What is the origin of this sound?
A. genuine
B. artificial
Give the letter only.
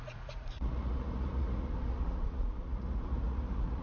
B